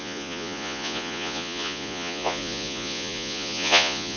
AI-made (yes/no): yes